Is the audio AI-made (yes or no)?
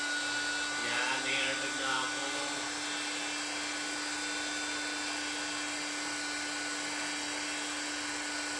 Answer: no